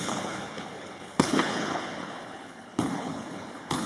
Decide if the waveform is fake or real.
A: fake